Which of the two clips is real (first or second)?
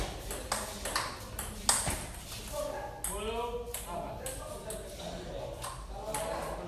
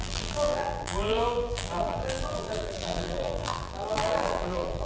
first